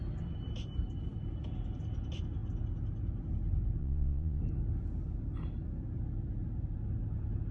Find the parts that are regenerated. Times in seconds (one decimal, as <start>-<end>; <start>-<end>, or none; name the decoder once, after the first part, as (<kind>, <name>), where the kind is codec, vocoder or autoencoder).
3.8-4.4 (vocoder, Vocos)